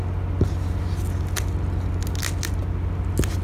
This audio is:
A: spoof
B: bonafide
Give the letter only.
B